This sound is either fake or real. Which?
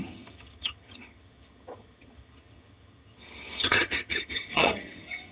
fake